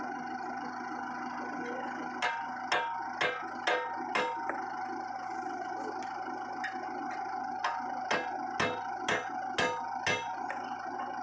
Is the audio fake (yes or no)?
no